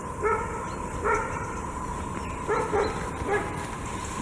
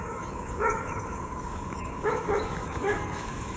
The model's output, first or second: second